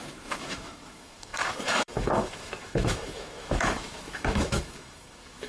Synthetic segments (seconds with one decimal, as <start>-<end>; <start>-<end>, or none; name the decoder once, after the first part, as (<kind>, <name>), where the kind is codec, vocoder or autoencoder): 0.0-5.5 (autoencoder, DAC-VAE)